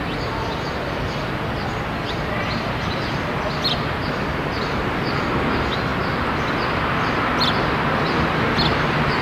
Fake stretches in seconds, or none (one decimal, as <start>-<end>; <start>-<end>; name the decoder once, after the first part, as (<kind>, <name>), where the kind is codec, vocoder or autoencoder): none